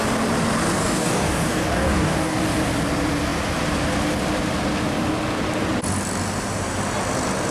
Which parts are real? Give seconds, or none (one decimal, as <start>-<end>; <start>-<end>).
0.0-0.8; 2.4-7.5